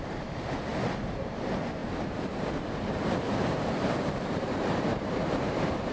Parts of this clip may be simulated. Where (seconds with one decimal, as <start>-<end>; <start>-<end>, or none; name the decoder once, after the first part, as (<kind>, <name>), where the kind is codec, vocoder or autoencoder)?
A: 0.0-0.7 (vocoder, BigVGAN v2); 1.2-5.9